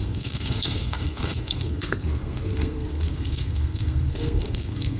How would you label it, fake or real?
fake